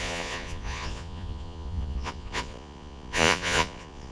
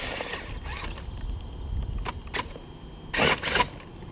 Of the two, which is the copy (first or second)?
first